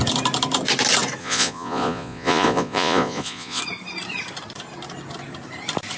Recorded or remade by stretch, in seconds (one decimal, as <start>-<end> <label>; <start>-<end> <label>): 0.0-1.2 recorded; 1.2-3.6 remade; 3.6-6.0 recorded